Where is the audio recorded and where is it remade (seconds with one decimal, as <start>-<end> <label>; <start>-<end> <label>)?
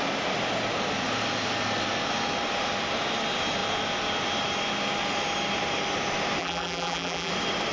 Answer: 0.0-6.4 recorded; 6.4-7.3 remade; 7.3-7.7 recorded